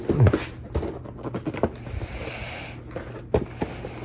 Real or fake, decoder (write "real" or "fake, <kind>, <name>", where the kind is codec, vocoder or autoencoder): real